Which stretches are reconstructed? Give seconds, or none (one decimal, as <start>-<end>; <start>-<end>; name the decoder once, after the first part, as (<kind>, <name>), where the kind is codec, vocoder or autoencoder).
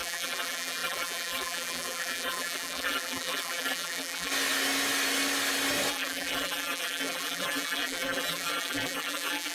0.0-4.3 (vocoder, BigVGAN v2); 5.9-9.5